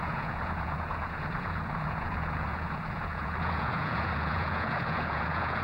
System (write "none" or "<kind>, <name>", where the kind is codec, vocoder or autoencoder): vocoder, Vocos